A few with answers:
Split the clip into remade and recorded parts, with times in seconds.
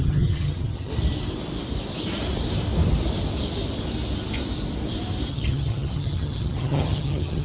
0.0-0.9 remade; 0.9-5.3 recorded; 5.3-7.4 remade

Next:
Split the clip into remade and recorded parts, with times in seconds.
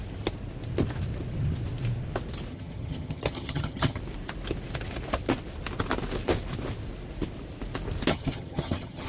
0.0-2.5 recorded; 2.5-4.0 remade; 4.0-8.1 recorded; 8.1-9.1 remade